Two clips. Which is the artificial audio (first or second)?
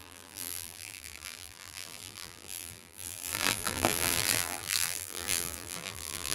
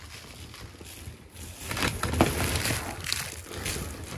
first